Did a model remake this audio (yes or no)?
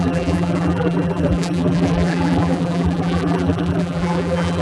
yes